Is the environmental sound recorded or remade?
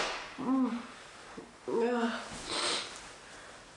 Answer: recorded